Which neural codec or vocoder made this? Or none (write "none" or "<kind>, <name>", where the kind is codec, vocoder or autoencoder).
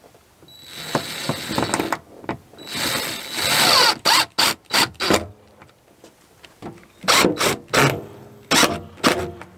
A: none